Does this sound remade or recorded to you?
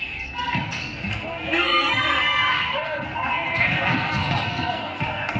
remade